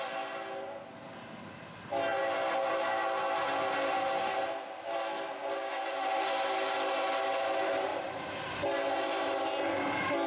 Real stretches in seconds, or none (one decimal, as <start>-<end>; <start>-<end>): 0.0-10.3